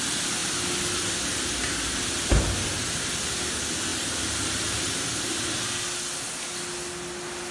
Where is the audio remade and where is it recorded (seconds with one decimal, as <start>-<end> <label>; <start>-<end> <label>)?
0.0-7.5 recorded